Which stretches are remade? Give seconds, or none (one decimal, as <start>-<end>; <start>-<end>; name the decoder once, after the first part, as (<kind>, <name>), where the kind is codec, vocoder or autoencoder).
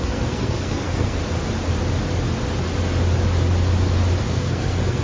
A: 0.0-1.2 (codec, SNAC); 4.2-5.0